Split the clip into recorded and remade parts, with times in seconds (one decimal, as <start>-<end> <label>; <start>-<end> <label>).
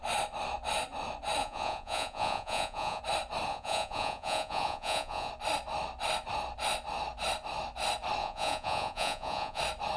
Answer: 0.0-1.4 recorded; 1.4-3.0 remade; 3.0-3.5 recorded; 3.5-5.3 remade; 5.3-8.2 recorded; 8.2-9.6 remade; 9.6-10.0 recorded